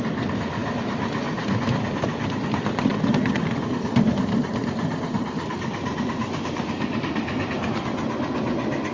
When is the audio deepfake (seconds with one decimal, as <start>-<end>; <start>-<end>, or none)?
2.9-7.8